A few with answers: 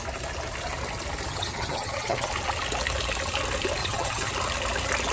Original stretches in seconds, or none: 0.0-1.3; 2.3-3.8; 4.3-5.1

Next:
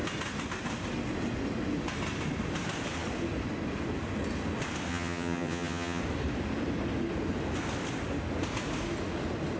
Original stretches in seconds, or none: 0.0-4.9; 6.0-9.6

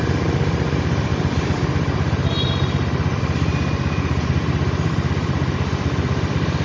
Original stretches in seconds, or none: 0.0-6.6

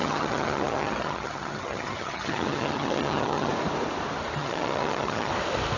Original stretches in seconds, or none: 3.5-4.4; 5.3-5.8

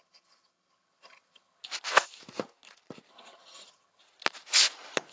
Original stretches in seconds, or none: 1.6-3.1; 4.0-5.1

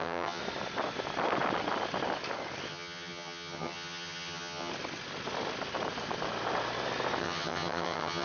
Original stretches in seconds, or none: 0.4-2.7; 4.7-7.2